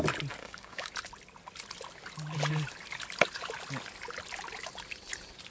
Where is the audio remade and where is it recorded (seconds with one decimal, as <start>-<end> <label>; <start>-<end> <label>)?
0.0-0.4 recorded; 0.4-0.9 remade; 0.9-5.5 recorded